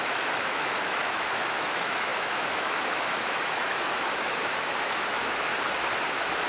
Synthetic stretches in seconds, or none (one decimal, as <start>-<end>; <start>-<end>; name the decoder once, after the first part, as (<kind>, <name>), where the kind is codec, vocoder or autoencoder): 0.0-5.5 (autoencoder, DAC-VAE); 6.1-6.5